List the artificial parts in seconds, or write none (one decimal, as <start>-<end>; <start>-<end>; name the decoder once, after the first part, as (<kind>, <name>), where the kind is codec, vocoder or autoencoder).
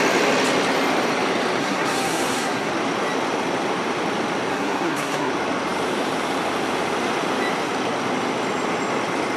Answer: 1.6-2.7 (codec, SNAC); 4.5-5.3